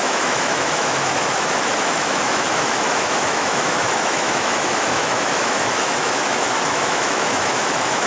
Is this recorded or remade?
remade